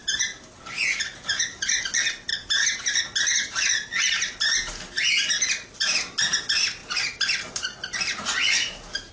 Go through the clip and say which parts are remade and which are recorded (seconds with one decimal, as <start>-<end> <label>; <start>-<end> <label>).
0.0-9.1 recorded